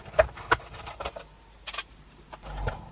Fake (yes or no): yes